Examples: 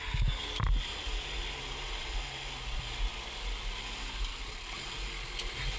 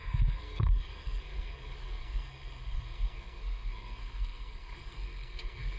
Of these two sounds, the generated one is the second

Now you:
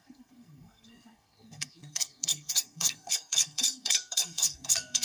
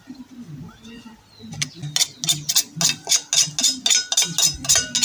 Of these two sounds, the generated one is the first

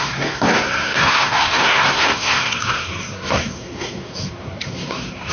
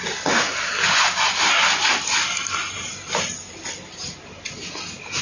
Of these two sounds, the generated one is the first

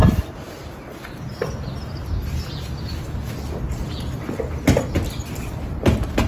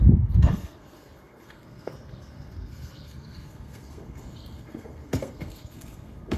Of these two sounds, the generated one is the second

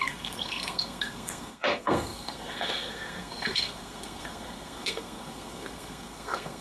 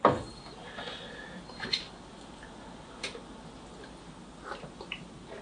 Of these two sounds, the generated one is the first